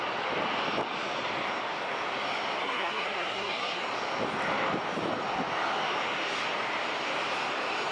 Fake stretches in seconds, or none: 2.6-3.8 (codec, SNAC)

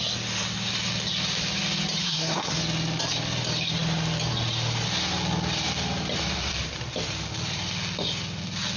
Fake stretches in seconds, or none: 2.0-2.6 (codec, SNAC)

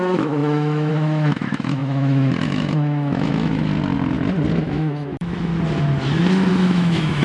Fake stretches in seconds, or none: 0.0-3.7 (autoencoder, DAC-VAE); 4.6-5.5; 6.5-7.2

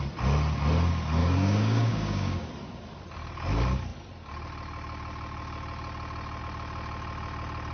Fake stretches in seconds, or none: 1.2-2.5 (codec, DAC)